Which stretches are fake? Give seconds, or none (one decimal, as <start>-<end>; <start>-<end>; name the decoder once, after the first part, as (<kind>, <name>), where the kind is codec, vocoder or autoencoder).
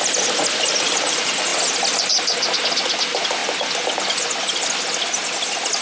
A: none